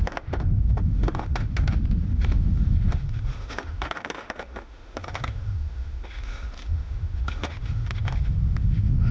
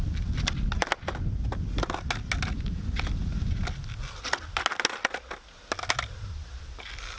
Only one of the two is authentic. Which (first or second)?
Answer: second